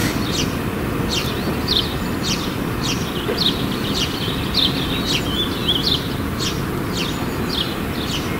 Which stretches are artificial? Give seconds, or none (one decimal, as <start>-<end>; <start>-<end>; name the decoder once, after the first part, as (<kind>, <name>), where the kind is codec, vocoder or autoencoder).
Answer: 0.0-5.0 (vocoder, BigVGAN v2); 5.6-6.5